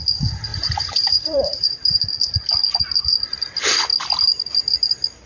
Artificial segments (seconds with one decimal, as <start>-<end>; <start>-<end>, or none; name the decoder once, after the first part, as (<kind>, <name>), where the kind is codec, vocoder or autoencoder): 0.5-2.0 (vocoder, BigVGAN v2)